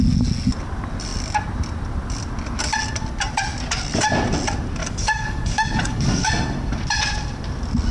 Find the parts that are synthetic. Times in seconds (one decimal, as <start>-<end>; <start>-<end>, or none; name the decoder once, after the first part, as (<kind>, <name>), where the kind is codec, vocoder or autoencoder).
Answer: 4.8-6.3 (codec, DAC)